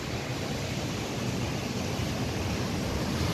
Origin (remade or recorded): recorded